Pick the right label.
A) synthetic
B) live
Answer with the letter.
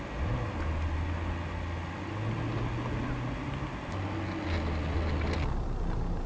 B